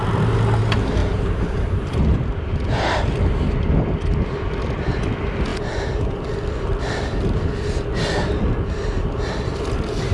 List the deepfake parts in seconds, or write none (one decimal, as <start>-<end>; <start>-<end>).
1.0-3.0